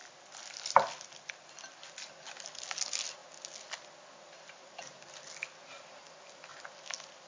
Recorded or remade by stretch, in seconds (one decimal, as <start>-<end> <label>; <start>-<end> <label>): 0.0-7.3 recorded